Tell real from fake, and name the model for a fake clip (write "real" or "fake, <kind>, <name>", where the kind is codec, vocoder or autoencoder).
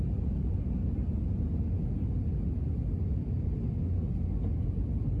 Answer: real